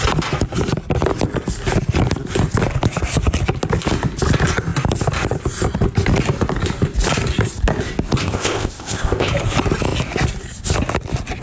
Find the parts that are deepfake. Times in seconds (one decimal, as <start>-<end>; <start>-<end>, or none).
8.2-9.3